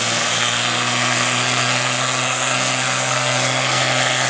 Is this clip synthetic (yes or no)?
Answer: yes